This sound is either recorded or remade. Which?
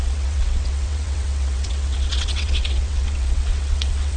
remade